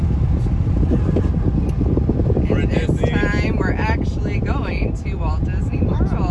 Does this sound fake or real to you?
real